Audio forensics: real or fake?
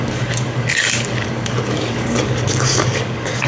fake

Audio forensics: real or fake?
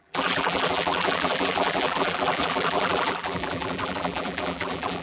fake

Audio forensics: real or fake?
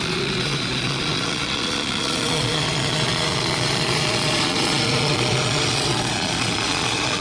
fake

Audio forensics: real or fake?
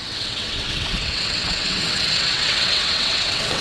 fake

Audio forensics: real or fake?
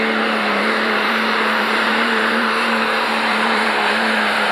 fake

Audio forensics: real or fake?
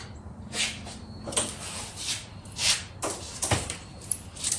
fake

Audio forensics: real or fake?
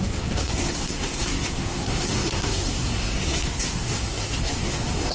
fake